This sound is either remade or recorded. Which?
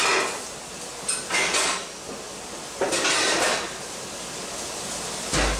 recorded